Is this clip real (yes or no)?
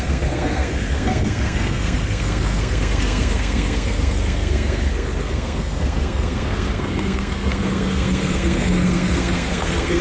no